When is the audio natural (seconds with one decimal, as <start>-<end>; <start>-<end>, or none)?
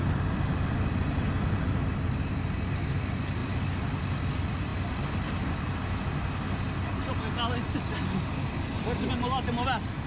0.0-10.1